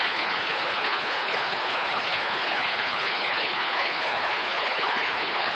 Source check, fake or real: fake